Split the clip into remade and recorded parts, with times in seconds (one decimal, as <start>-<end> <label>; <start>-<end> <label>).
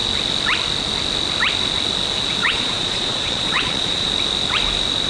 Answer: 0.0-2.4 recorded; 2.4-4.1 remade; 4.1-5.1 recorded